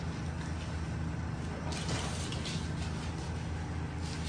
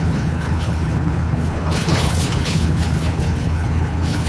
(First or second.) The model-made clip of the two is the second